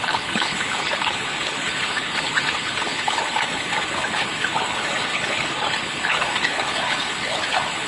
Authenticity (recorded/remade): remade